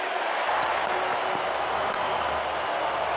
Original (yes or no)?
yes